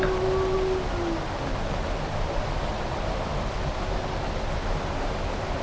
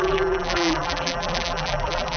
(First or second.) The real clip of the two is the first